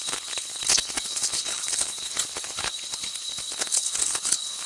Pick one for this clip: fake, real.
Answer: fake